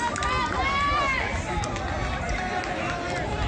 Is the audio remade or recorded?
recorded